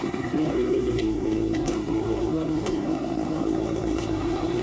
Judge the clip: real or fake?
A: fake